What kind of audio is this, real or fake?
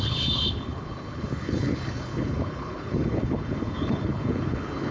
fake